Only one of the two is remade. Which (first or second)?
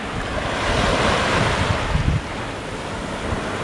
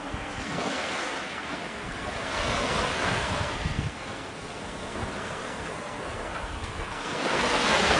second